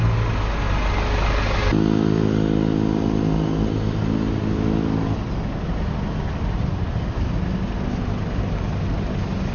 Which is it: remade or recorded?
recorded